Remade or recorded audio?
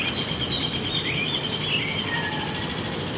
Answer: recorded